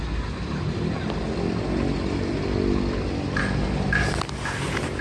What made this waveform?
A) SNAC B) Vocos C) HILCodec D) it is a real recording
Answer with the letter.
D